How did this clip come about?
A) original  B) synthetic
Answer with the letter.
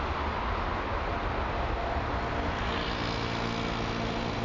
A